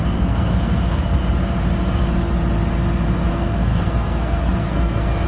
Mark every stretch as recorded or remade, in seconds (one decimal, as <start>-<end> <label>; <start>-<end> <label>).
0.0-1.2 remade; 1.2-3.3 recorded; 3.3-5.3 remade